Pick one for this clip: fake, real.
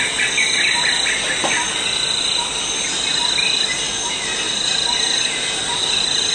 real